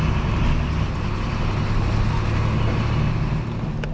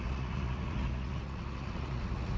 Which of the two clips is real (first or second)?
first